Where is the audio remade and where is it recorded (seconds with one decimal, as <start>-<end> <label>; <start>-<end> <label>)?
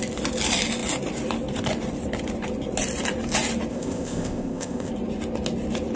0.0-3.7 recorded; 3.7-4.9 remade; 4.9-6.0 recorded